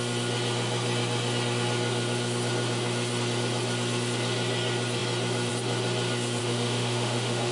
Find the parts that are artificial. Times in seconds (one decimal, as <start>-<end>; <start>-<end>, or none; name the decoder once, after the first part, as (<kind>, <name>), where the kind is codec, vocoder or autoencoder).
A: 6.4-7.5 (autoencoder, DAC-VAE)